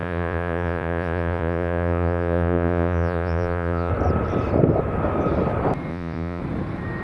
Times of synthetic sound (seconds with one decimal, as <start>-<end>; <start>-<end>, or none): 0.0-3.9; 5.9-6.4